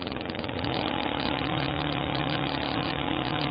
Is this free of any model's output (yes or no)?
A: no